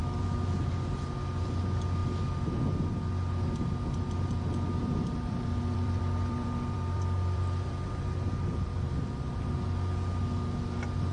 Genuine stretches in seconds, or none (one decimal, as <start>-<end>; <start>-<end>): 0.0-4.8; 9.5-11.1